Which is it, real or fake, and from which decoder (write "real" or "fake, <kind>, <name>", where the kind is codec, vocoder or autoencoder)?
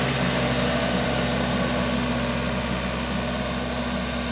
real